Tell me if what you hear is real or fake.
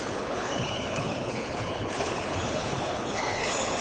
fake